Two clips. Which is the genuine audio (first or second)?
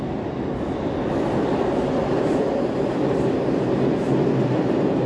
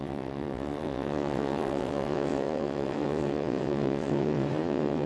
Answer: first